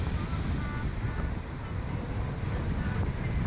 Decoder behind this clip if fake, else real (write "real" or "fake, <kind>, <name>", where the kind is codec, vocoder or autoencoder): real